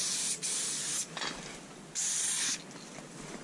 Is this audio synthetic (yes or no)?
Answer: no